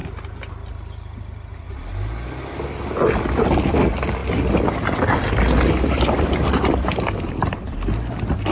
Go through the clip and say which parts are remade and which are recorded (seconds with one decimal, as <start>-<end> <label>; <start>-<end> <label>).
0.0-8.5 recorded